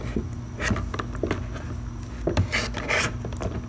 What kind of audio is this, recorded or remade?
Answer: recorded